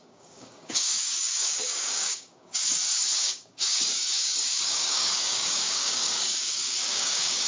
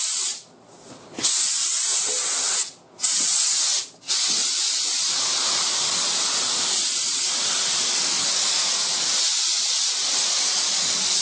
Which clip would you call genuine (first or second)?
second